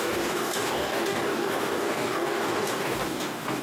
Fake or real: fake